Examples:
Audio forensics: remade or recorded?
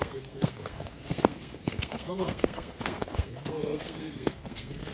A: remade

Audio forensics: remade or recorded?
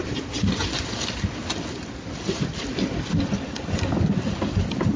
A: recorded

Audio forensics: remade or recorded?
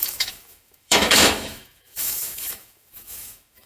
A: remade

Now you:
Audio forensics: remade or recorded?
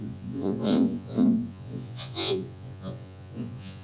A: remade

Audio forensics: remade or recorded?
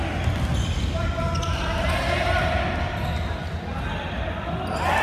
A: recorded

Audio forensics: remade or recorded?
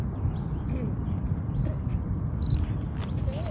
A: recorded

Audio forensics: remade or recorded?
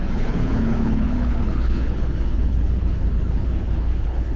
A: remade